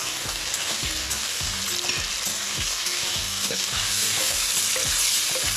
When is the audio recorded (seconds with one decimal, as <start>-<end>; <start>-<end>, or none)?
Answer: 1.6-2.3; 4.5-5.6